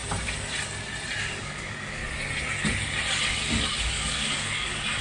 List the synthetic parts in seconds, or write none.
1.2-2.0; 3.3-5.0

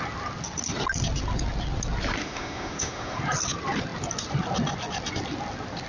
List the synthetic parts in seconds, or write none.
2.2-3.2

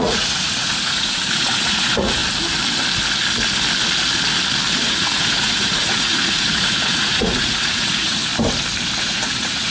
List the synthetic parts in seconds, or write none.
0.0-2.2; 4.7-8.3; 9.0-9.7

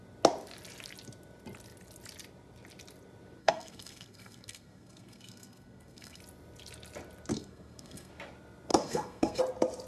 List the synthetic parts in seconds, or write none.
3.4-6.2; 7.3-8.1; 8.7-9.4